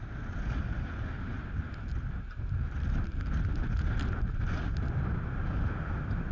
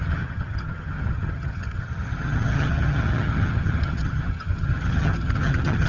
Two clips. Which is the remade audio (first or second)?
second